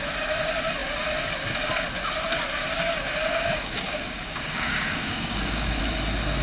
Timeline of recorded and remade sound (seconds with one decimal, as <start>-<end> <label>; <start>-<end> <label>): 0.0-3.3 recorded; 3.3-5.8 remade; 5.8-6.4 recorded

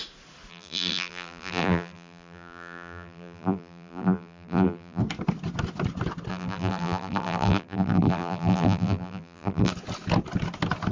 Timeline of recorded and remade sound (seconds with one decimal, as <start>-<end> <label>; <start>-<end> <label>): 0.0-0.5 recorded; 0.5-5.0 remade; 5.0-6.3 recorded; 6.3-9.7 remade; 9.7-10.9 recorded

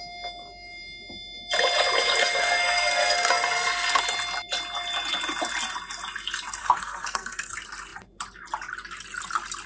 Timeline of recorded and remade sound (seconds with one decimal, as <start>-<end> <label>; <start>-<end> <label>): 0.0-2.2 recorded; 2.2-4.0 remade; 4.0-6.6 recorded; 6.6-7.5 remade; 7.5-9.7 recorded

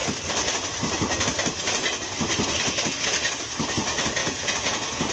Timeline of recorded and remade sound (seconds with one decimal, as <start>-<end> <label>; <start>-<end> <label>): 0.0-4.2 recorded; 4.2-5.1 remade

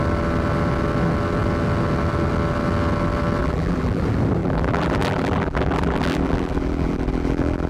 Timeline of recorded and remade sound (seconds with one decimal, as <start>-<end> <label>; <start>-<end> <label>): 0.0-3.4 recorded; 3.4-4.0 remade; 4.0-4.4 recorded; 4.4-7.7 remade